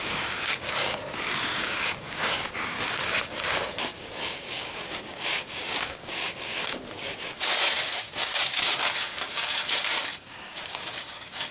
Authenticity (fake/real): fake